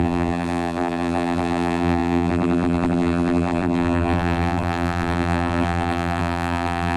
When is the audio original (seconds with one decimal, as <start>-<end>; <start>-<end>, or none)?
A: none